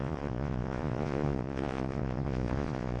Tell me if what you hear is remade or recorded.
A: remade